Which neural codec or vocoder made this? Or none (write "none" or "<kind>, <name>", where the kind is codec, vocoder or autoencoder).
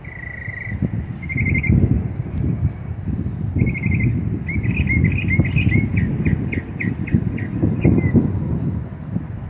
none